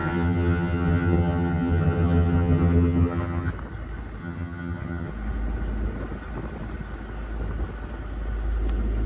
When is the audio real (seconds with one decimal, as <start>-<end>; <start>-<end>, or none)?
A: 3.5-4.2; 5.1-9.1

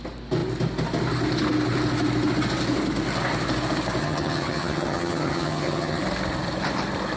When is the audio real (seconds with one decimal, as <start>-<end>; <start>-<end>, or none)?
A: 0.0-4.0; 6.0-7.2

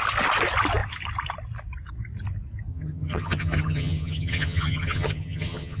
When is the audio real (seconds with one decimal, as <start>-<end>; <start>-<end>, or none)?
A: 0.0-2.7

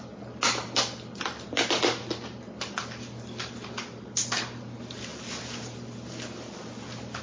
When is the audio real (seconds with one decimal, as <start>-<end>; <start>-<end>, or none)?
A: 0.0-7.2

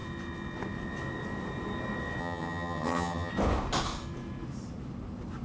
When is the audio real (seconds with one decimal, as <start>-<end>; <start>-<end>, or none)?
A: 0.0-2.2; 3.3-5.4

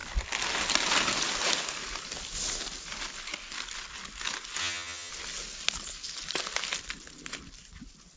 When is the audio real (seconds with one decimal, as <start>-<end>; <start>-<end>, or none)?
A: 0.0-4.6; 5.1-8.2